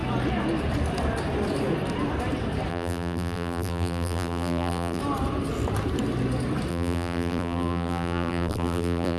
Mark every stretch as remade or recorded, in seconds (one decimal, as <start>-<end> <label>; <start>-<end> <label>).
0.0-2.7 recorded; 2.7-5.0 remade; 5.0-6.7 recorded; 6.7-9.2 remade